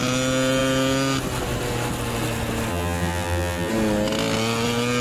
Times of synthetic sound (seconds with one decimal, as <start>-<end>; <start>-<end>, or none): 2.7-3.7